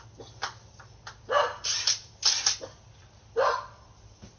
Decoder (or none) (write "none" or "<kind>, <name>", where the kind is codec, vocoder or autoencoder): none